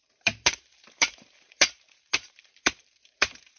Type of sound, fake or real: fake